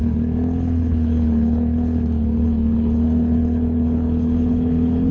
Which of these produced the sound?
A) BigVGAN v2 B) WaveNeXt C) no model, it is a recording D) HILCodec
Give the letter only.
D